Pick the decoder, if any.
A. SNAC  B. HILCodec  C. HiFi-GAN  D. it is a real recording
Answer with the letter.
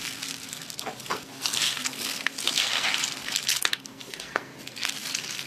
A